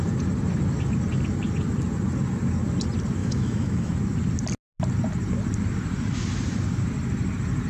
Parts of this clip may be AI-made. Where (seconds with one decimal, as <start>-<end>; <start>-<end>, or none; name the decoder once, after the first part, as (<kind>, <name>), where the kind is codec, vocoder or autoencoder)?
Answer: 3.2-3.9 (autoencoder, DAC-VAE)